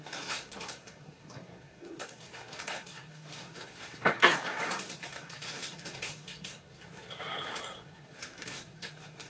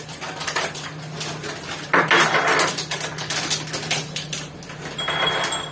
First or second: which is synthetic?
first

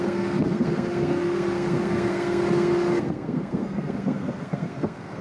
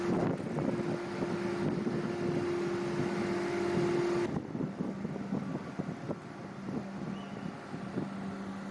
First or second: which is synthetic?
first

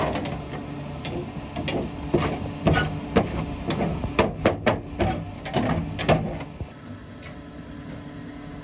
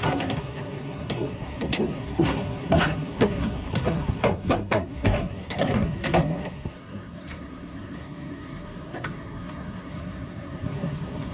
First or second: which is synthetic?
second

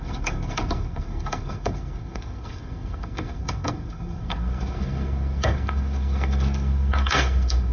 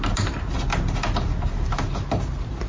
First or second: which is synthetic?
first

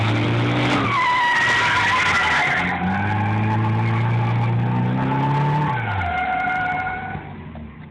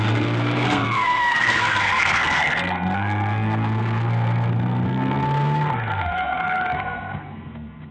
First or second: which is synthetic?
second